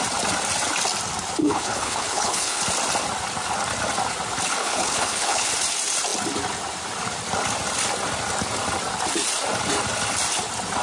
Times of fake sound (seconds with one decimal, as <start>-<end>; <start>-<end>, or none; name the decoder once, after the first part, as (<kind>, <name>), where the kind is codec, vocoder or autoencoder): 1.4-2.6 (codec, HILCodec); 4.6-5.5